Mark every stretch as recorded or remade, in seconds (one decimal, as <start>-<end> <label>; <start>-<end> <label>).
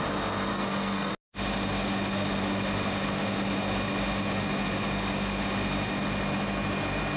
0.0-0.5 recorded; 0.5-1.1 remade; 1.1-7.2 recorded